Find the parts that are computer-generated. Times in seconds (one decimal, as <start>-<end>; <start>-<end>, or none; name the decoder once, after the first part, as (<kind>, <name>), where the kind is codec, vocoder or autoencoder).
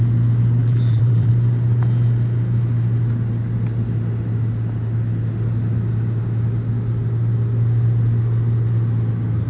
0.6-1.3 (vocoder, BigVGAN v2)